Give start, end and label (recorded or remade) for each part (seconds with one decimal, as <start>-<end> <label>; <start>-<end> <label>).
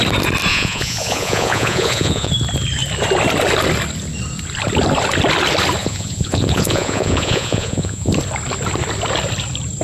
0.0-0.5 recorded; 0.5-2.3 remade; 2.3-5.8 recorded; 5.8-8.1 remade; 8.1-9.8 recorded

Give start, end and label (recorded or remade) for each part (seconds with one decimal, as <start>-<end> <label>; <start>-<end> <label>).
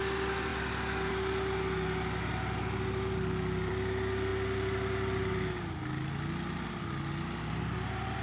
0.0-8.2 recorded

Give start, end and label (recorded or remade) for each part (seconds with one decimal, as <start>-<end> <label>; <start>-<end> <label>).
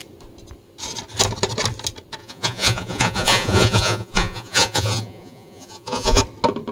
0.0-2.2 recorded; 2.2-6.2 remade; 6.2-6.7 recorded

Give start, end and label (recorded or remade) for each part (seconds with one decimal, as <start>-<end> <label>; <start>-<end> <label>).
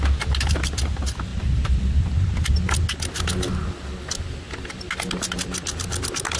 0.0-6.4 recorded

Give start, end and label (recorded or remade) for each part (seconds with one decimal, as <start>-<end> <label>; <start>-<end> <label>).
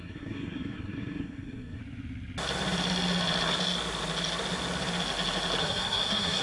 0.0-1.8 remade; 1.8-5.6 recorded; 5.6-6.4 remade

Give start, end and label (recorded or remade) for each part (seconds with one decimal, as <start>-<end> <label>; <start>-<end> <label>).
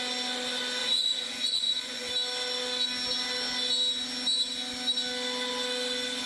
0.0-0.8 recorded; 0.8-2.1 remade; 2.1-6.3 recorded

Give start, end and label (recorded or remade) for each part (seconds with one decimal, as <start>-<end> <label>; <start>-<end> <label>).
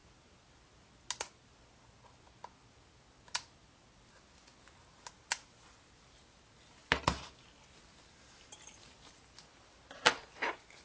0.0-10.8 recorded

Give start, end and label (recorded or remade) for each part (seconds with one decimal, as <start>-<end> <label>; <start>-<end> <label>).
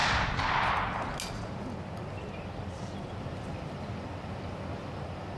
0.0-3.2 recorded; 3.2-5.4 remade